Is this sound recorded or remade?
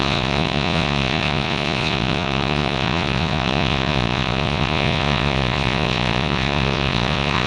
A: remade